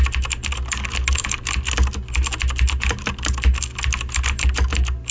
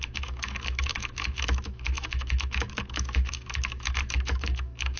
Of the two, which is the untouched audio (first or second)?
first